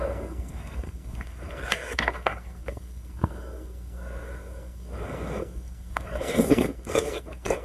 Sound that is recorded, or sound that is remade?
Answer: remade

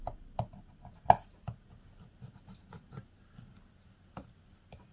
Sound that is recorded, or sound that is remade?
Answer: recorded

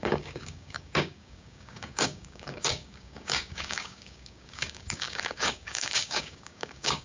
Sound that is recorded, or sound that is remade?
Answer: remade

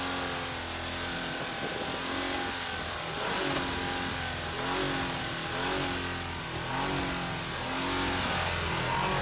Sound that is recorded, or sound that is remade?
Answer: recorded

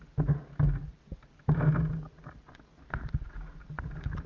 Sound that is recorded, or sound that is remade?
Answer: recorded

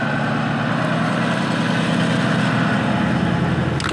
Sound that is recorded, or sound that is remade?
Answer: recorded